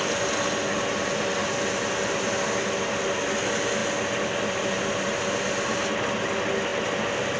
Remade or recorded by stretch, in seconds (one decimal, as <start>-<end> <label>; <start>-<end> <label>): 0.0-7.4 recorded